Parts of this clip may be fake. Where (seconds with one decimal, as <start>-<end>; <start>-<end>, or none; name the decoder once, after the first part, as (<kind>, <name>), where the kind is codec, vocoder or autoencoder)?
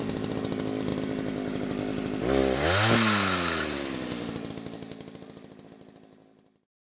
none